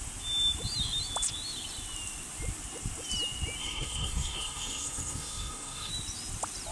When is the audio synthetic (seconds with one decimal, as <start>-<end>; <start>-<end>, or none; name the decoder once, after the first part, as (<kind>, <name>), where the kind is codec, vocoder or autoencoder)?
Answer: 3.6-5.9 (codec, SNAC)